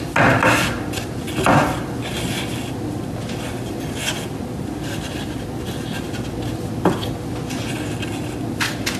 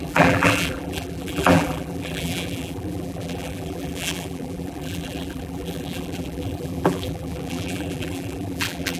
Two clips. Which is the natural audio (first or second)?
first